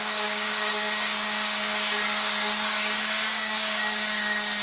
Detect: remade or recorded remade